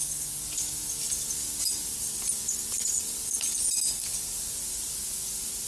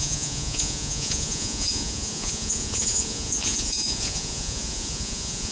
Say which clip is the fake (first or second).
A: second